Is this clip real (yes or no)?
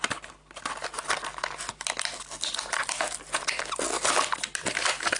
yes